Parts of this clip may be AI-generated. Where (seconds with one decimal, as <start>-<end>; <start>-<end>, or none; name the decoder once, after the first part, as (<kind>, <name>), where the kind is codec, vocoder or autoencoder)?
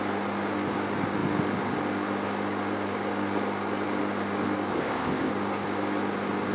4.7-5.3 (codec, ZipCodec)